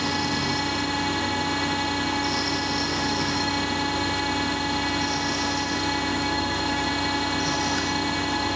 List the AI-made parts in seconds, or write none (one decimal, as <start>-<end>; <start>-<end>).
2.9-3.5; 6.1-6.9